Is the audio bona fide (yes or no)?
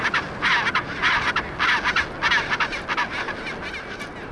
yes